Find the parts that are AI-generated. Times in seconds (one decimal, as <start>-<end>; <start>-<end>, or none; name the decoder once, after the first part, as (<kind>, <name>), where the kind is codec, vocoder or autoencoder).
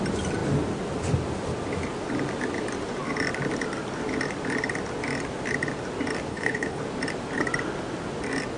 6.3-6.8 (codec, HILCodec)